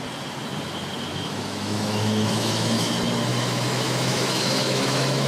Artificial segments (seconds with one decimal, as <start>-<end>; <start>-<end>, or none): 1.1-2.9; 3.3-5.3